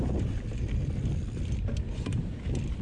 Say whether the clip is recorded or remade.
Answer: remade